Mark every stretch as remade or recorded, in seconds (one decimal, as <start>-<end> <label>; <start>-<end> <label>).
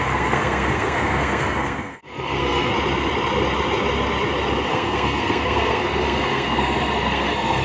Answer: 0.0-2.7 remade; 2.7-4.7 recorded; 4.7-7.6 remade